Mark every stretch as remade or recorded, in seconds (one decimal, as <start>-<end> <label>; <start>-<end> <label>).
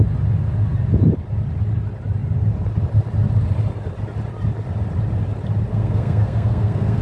0.0-5.7 recorded; 5.7-7.0 remade